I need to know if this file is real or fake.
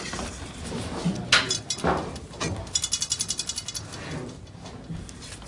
real